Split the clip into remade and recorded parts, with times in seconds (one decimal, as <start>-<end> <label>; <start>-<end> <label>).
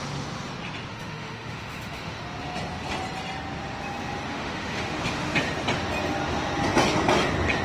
0.0-0.9 recorded; 0.9-2.2 remade; 2.2-4.3 recorded; 4.3-5.0 remade; 5.0-7.6 recorded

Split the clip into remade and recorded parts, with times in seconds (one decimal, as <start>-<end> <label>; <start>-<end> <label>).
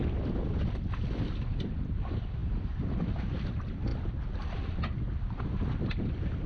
0.0-6.5 recorded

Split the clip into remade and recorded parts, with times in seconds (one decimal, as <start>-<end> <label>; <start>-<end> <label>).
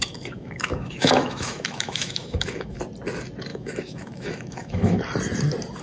0.0-2.8 remade; 2.8-3.5 recorded; 3.5-5.0 remade; 5.0-5.8 recorded